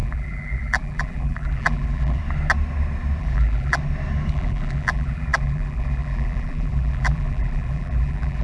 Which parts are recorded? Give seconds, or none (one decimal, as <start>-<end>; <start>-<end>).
2.2-3.2; 3.8-4.3